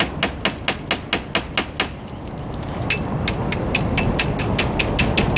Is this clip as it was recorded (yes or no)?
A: yes